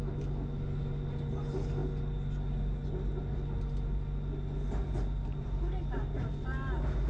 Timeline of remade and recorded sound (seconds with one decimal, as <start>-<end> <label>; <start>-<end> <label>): 0.0-7.1 recorded